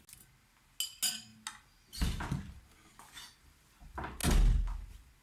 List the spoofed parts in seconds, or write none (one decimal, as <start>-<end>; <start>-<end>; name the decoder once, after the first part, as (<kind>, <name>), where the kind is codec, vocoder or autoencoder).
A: none